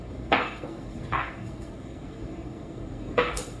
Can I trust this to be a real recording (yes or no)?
no